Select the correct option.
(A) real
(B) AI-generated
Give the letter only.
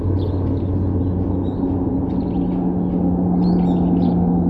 A